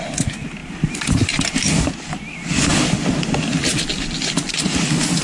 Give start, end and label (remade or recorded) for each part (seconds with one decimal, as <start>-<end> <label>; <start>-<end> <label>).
0.0-5.2 recorded